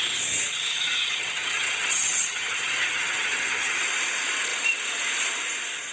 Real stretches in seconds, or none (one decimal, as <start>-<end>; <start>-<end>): 0.0-0.7; 3.8-5.9